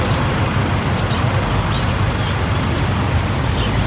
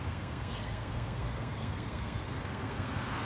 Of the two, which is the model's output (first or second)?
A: second